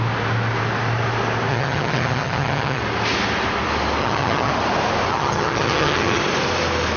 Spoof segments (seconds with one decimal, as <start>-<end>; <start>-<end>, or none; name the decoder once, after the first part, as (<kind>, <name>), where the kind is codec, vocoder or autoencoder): 1.5-2.8 (vocoder, HiFi-GAN); 4.0-4.5; 5.1-6.2